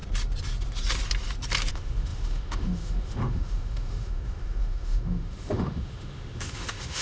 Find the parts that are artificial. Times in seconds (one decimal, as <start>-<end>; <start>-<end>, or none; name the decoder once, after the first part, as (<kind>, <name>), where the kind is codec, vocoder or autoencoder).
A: 1.7-7.0 (autoencoder, DAC-VAE)

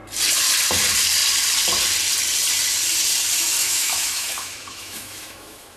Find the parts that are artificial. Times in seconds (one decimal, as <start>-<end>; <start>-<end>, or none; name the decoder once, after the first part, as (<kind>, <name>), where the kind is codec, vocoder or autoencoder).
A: 3.6-5.8 (autoencoder, DAC-VAE)

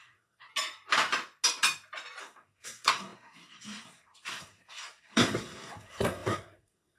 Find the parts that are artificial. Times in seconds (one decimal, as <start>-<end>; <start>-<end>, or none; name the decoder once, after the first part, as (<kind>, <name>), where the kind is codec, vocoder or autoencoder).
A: 0.0-0.5 (codec, SNAC); 2.2-7.0

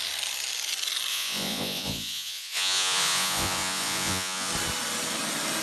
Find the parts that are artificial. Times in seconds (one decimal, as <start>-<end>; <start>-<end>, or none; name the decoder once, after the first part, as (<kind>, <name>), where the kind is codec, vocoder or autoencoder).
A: 1.1-4.5 (vocoder, Vocos)